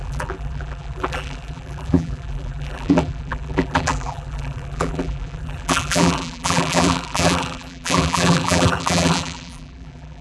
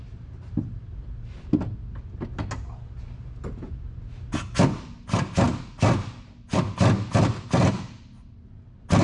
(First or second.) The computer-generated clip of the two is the first